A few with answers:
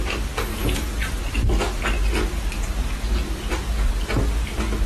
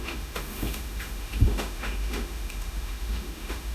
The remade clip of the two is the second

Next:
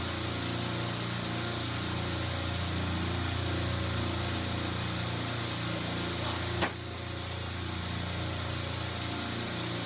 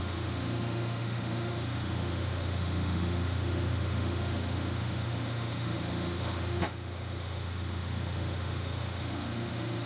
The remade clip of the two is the second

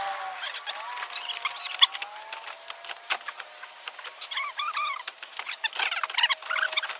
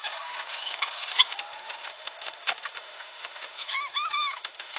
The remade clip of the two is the second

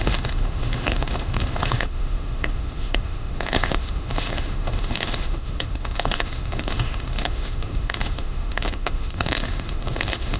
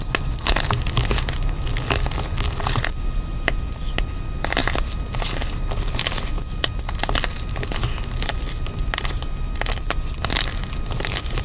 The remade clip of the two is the first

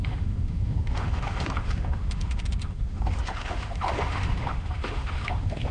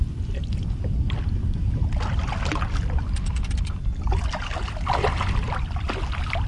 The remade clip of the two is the first